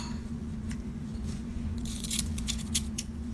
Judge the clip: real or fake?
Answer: fake